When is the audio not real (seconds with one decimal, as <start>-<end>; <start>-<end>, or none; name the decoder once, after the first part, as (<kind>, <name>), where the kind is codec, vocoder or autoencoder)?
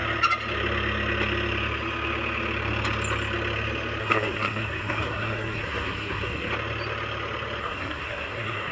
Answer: 4.0-6.5 (codec, SNAC); 7.6-8.7